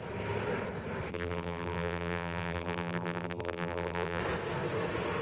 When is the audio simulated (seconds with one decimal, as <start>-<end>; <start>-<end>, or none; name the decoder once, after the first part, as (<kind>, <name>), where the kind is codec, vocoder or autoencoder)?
1.1-4.2 (vocoder, BigVGAN v2)

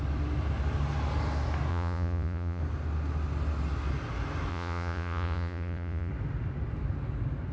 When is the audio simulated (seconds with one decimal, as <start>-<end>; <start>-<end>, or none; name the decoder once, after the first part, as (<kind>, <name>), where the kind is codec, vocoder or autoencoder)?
1.7-2.6 (vocoder, Vocos); 4.5-6.1

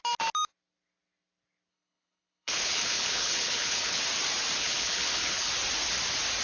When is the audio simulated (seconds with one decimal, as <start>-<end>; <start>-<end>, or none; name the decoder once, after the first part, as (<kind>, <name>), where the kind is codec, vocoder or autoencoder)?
1.7-4.0 (codec, HILCodec); 4.6-5.5

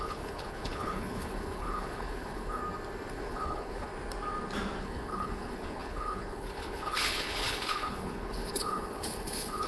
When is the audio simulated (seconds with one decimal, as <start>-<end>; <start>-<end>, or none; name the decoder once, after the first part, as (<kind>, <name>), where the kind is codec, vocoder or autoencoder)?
0.0-2.6 (codec, HILCodec); 3.1-3.9; 4.8-9.7

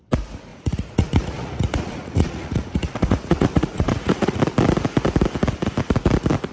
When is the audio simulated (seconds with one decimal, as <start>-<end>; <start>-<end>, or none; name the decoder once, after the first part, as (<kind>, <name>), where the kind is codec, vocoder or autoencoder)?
0.5-4.4 (vocoder, Vocos)

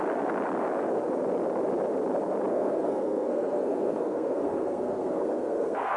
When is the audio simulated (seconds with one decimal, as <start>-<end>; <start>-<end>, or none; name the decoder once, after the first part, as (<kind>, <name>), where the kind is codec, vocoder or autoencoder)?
2.5-6.0 (codec, SNAC)

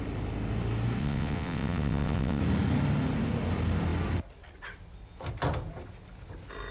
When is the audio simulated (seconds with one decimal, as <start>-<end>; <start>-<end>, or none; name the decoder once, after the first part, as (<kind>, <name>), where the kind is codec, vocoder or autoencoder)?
1.0-2.4 (vocoder, WaveNeXt)